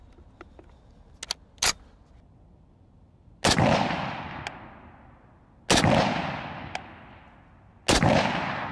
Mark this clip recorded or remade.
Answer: recorded